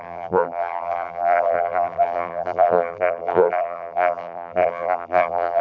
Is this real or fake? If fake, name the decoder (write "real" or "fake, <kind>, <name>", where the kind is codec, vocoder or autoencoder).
fake, vocoder, BigVGAN v2